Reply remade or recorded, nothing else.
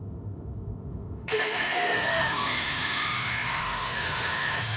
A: remade